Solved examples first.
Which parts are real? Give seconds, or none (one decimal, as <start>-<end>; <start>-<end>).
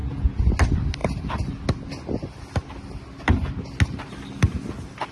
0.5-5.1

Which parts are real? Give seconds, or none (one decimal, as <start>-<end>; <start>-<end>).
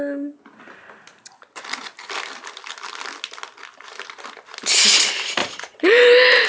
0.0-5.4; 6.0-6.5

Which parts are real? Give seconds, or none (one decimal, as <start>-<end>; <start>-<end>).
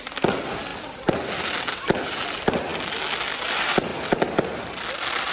0.0-5.3